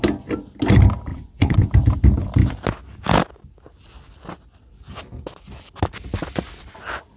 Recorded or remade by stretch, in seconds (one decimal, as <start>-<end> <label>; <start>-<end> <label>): 0.0-1.1 recorded; 1.1-1.7 remade; 1.7-7.2 recorded